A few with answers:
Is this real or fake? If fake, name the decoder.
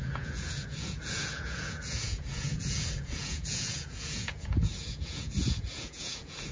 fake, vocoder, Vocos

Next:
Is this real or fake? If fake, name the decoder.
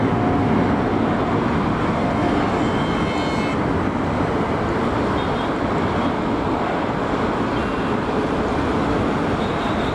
real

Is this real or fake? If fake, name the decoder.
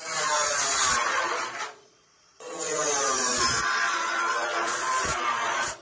fake, vocoder, Vocos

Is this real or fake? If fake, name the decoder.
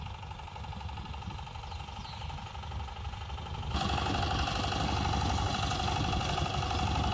real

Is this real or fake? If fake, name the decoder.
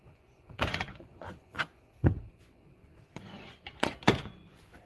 fake, vocoder, Vocos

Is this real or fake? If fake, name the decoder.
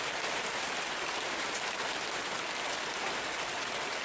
real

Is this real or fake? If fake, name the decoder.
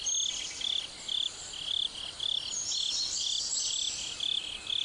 real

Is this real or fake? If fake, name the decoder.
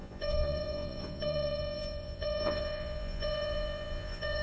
fake, vocoder, Vocos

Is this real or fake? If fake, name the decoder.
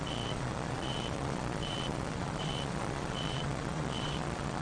fake, vocoder, Vocos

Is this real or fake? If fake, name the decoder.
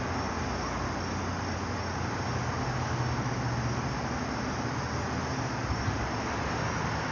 real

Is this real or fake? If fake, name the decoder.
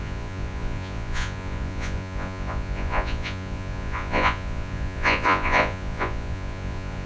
fake, vocoder, Vocos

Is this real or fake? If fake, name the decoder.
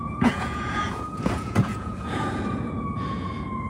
fake, vocoder, Vocos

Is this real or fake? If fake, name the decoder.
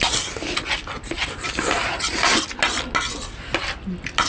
real